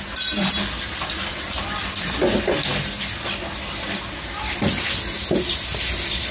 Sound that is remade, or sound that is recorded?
recorded